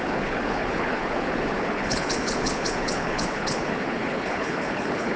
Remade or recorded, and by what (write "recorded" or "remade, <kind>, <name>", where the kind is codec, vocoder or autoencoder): remade, codec, HILCodec